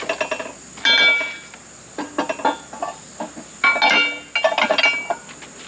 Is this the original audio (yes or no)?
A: yes